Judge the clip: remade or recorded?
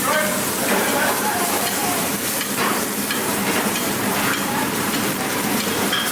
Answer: remade